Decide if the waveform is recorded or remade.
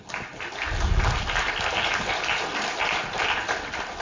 recorded